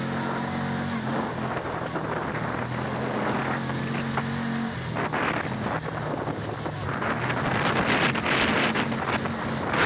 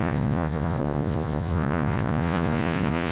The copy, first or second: second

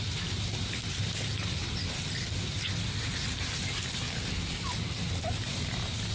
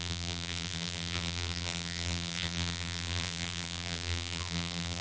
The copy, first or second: second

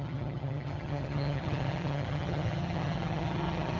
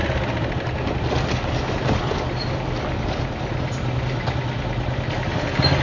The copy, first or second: first